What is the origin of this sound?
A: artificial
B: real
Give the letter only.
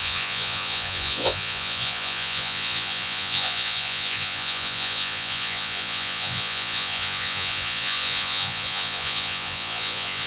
A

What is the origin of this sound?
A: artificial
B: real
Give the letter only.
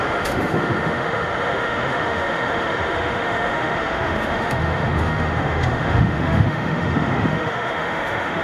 A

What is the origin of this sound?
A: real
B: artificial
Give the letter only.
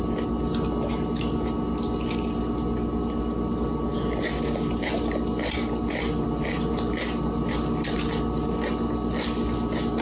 A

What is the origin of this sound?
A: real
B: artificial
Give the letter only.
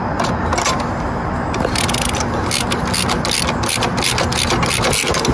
A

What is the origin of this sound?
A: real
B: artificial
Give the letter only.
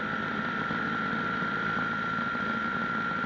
A